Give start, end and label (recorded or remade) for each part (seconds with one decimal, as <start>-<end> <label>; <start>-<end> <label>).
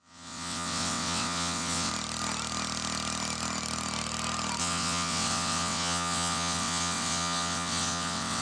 0.0-1.9 remade; 1.9-4.6 recorded; 4.6-8.4 remade